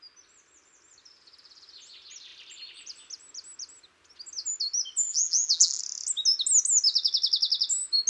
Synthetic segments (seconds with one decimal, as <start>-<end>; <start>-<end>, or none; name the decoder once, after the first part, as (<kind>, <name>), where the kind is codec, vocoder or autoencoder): 5.0-5.8 (vocoder, BigVGAN v2)